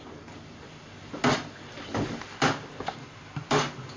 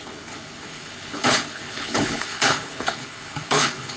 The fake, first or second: second